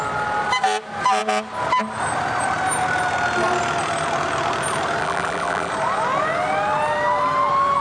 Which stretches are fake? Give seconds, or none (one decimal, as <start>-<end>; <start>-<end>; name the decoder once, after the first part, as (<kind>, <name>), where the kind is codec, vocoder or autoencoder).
5.0-5.7 (vocoder, BigVGAN v2)